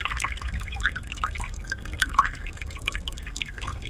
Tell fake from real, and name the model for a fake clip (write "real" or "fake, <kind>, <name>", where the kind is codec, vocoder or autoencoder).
fake, codec, SNAC